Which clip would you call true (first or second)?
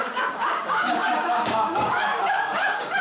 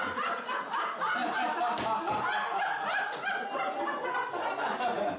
second